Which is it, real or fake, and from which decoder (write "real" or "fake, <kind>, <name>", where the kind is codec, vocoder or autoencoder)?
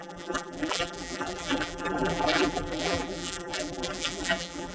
fake, vocoder, BigVGAN v2